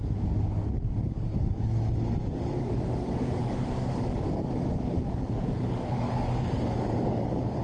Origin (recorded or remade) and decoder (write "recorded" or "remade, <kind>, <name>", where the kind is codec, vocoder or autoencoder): remade, codec, DAC